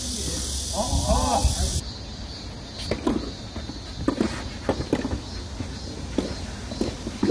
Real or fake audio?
real